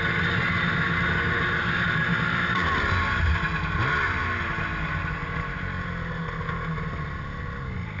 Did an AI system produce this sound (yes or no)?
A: no